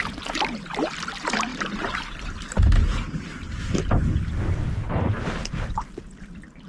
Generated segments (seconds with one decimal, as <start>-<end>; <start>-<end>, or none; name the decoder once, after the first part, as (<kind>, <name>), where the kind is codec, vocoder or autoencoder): none